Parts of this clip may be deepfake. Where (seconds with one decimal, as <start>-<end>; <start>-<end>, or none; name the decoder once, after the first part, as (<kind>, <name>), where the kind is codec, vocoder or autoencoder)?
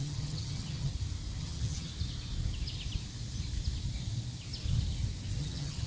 0.0-0.9 (vocoder, HiFi-GAN); 1.4-1.9; 5.4-5.9